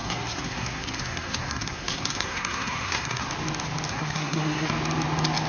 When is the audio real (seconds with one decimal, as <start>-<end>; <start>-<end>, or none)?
3.3-3.9; 4.7-5.5